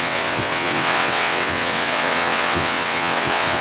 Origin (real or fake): fake